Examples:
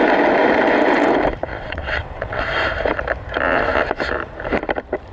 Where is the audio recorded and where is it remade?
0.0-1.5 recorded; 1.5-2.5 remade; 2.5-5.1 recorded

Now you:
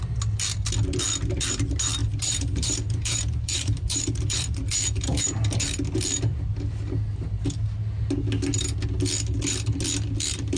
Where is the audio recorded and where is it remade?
0.0-2.0 recorded; 2.0-5.2 remade; 5.2-10.6 recorded